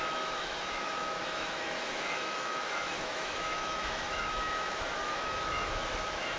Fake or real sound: fake